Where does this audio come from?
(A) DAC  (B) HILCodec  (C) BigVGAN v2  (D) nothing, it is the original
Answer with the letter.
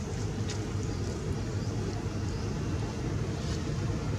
C